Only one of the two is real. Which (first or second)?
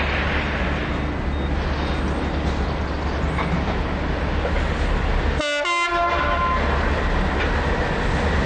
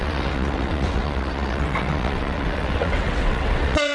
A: first